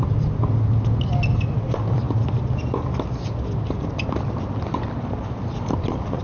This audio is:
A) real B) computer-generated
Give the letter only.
A